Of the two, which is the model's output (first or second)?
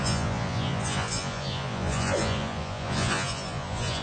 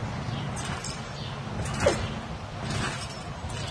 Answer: first